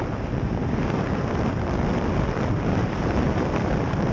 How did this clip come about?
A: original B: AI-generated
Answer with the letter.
B